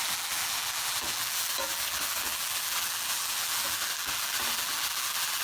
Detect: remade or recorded remade